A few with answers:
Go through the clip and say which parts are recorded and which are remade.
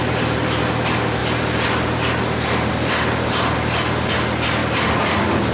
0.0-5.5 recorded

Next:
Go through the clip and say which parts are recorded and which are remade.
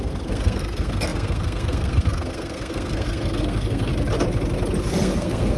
0.0-3.9 remade; 3.9-4.9 recorded; 4.9-5.6 remade